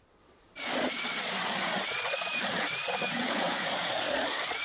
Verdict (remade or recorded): remade